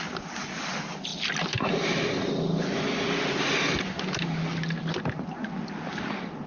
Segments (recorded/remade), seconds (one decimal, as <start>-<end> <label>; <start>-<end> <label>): 0.0-6.5 recorded